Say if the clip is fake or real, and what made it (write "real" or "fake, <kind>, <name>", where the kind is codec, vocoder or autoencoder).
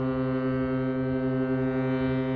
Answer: real